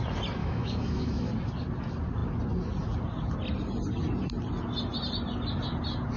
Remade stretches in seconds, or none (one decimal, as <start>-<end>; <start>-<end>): 0.4-1.3